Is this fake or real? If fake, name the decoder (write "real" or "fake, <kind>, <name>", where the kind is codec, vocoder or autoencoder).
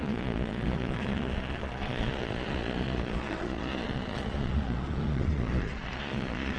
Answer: fake, vocoder, Vocos